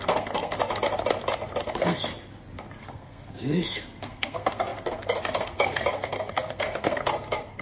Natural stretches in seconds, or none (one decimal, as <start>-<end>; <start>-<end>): 0.6-1.6; 2.1-2.8